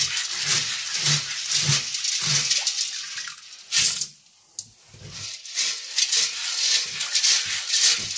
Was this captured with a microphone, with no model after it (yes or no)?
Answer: yes